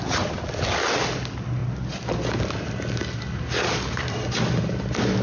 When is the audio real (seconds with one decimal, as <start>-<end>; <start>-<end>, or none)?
0.0-5.2